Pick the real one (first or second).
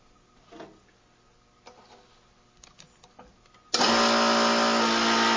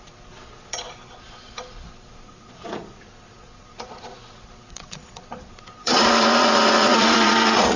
first